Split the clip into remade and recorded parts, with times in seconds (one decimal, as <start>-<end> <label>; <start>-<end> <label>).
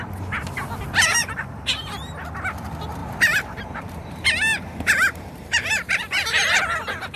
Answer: 0.0-1.2 recorded; 1.2-1.9 remade; 1.9-3.0 recorded; 3.0-6.6 remade; 6.6-7.2 recorded